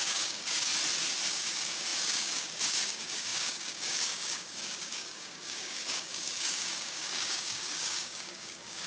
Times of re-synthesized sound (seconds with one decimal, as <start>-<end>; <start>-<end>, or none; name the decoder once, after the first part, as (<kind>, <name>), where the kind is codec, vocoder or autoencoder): 0.0-0.7 (codec, DAC); 1.3-8.9